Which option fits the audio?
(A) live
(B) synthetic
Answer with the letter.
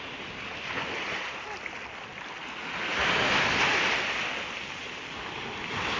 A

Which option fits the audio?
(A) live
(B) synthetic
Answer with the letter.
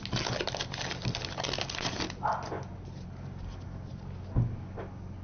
A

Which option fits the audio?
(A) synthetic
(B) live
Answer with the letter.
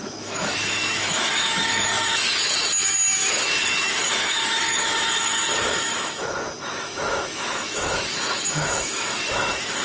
A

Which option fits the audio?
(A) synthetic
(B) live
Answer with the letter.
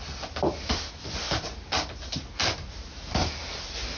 B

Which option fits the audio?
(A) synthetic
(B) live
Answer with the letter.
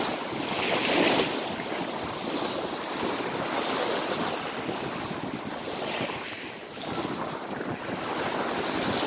B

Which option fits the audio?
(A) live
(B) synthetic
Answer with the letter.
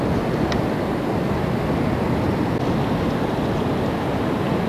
A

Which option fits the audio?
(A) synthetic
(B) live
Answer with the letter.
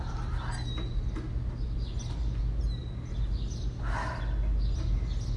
B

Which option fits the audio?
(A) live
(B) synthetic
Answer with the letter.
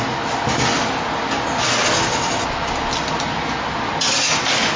A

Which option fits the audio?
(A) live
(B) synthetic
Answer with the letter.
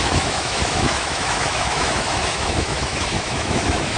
B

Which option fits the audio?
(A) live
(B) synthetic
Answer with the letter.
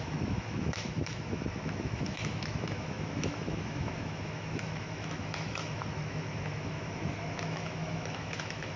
B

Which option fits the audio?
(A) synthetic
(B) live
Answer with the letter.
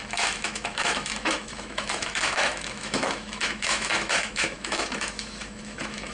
A